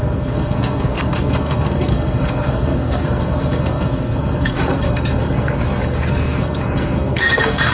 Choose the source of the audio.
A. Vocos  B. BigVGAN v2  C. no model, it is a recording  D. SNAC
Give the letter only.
D